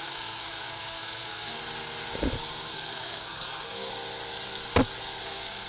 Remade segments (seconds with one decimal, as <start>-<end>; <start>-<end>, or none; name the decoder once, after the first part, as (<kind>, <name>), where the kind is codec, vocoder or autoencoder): 0.0-1.6 (codec, SNAC); 2.7-3.9; 5.2-5.7